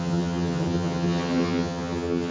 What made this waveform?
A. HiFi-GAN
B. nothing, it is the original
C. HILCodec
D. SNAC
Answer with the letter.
A